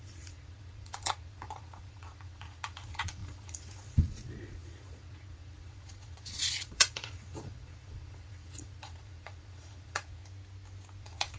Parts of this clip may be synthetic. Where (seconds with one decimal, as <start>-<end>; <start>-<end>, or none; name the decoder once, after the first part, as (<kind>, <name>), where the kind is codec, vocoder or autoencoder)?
0.0-10.2 (vocoder, Vocos); 11.0-11.4